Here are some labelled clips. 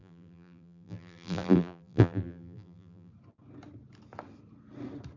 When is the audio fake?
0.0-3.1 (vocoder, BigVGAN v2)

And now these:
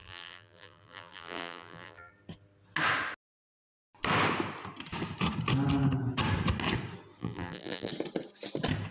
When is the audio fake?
0.0-2.1 (vocoder, BigVGAN v2); 7.2-7.9